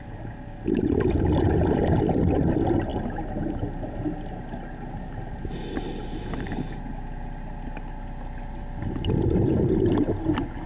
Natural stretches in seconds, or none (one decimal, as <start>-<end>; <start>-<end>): 0.0-10.7